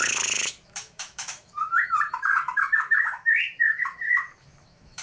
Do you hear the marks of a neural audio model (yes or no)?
yes